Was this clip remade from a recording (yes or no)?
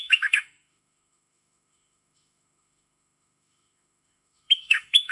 yes